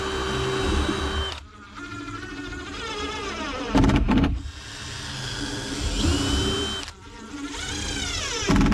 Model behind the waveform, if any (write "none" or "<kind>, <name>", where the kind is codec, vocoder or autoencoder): none